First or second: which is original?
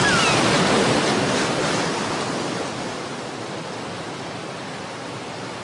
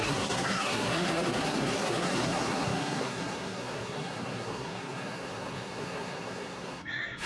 first